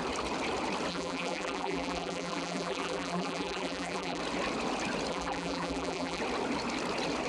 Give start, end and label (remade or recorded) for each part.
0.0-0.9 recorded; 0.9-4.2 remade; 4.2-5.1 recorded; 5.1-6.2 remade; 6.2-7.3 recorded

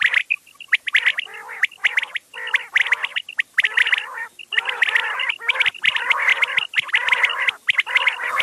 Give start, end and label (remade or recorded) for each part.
0.0-8.4 recorded

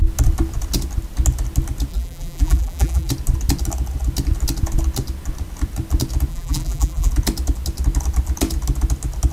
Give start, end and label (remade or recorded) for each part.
0.0-1.9 recorded; 1.9-3.1 remade; 3.1-6.3 recorded; 6.3-7.1 remade; 7.1-9.3 recorded

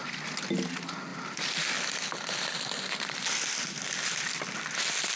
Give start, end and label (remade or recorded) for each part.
0.0-1.1 recorded; 1.1-3.1 remade; 3.1-5.2 recorded

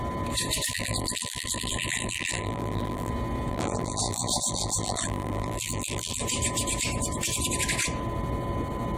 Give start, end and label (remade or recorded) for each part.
0.0-0.7 recorded; 0.7-3.1 remade; 3.1-3.5 recorded; 3.5-6.2 remade; 6.2-9.0 recorded

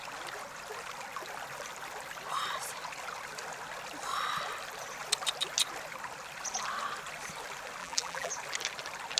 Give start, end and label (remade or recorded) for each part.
0.0-7.8 recorded; 7.8-8.3 remade; 8.3-9.2 recorded